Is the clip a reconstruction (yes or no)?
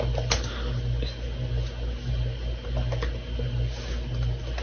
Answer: no